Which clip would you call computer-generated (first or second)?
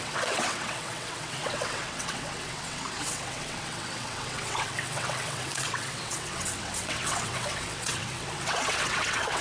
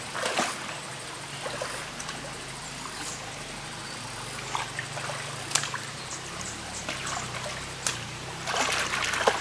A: first